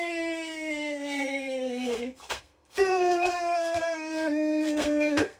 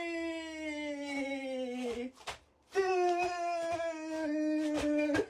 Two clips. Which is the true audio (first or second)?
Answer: second